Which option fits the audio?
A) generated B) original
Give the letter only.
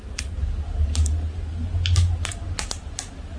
B